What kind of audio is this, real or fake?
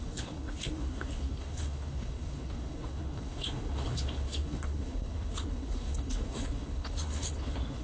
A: fake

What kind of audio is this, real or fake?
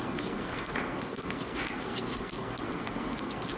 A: fake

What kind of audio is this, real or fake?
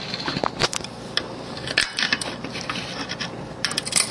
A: real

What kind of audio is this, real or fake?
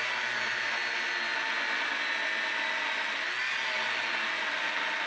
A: real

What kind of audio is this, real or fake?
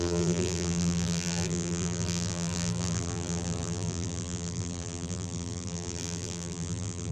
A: fake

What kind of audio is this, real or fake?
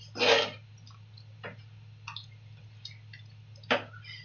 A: real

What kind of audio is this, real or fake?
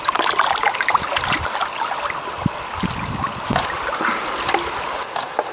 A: real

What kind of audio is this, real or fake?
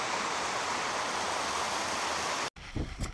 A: real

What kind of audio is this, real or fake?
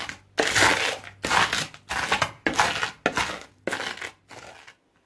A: real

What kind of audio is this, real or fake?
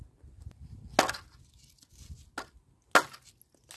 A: real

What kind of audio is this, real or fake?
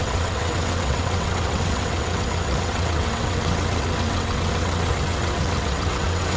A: fake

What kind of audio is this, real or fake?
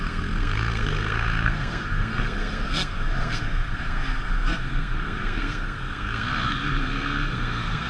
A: fake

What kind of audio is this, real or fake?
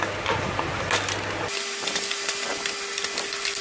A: real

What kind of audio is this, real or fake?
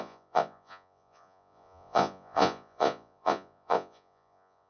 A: fake